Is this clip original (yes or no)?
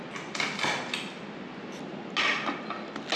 yes